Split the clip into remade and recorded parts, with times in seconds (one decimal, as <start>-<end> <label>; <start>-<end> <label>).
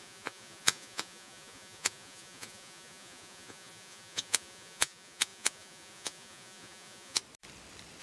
0.0-7.2 remade; 7.2-8.0 recorded